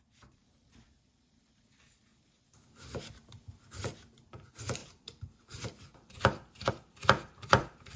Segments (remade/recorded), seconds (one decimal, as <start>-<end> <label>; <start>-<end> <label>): 0.0-4.8 recorded; 4.8-6.7 remade; 6.7-8.0 recorded